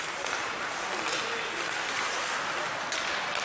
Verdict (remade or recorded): recorded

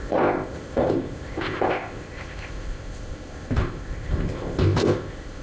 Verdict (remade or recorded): remade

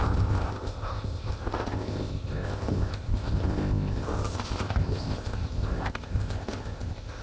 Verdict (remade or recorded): remade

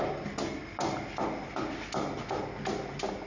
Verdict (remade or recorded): recorded